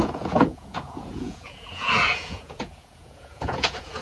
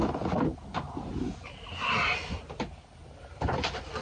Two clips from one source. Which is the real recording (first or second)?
second